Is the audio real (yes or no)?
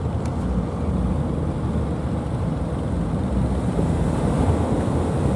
yes